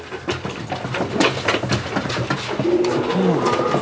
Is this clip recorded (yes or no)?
yes